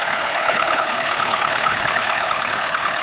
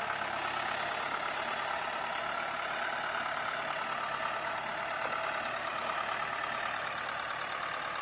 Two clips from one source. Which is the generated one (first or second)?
first